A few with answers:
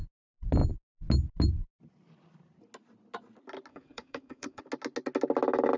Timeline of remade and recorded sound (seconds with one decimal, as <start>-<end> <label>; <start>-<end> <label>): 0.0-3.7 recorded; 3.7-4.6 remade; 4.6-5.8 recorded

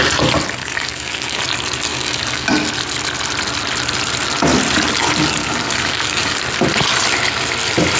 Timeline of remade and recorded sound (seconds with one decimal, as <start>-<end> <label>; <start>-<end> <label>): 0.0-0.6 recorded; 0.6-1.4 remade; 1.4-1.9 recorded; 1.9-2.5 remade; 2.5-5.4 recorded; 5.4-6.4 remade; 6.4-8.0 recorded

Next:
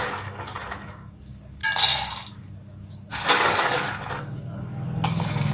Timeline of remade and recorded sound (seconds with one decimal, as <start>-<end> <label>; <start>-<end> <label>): 0.0-1.6 remade; 1.6-2.3 recorded; 2.3-5.5 remade

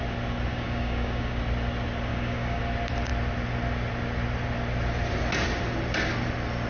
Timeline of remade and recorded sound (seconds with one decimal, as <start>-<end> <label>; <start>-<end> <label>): 0.0-0.5 recorded; 0.5-1.4 remade; 1.4-2.1 recorded; 2.1-2.6 remade; 2.6-6.7 recorded